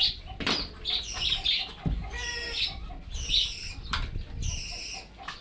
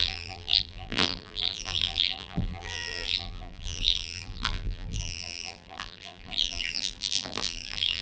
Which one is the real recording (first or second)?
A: first